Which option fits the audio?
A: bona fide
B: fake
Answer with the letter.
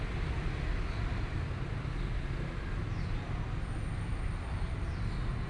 A